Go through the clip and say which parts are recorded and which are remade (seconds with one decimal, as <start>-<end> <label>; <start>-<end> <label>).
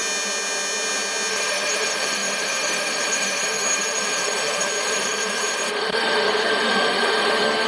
0.0-1.3 recorded; 1.3-7.7 remade